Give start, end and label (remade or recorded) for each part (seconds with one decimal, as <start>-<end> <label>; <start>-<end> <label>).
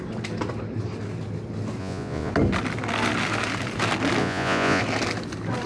0.0-1.8 recorded; 1.8-2.3 remade; 2.3-4.2 recorded; 4.2-4.8 remade; 4.8-5.7 recorded